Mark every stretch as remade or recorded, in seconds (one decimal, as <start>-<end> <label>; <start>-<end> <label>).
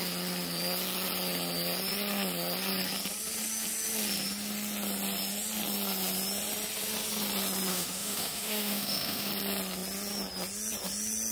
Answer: 0.0-7.7 recorded; 7.7-9.3 remade; 9.3-11.3 recorded